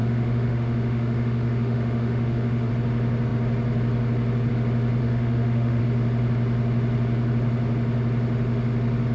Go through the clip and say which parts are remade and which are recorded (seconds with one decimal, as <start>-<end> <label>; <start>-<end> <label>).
0.0-2.7 remade; 2.7-5.0 recorded; 5.0-5.8 remade; 5.8-9.1 recorded